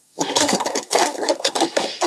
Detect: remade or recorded remade